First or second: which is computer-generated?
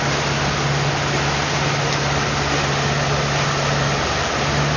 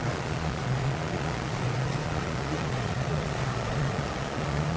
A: second